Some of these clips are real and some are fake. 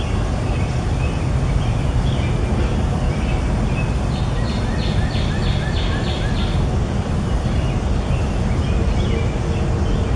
real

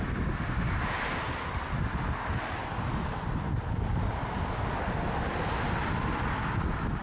real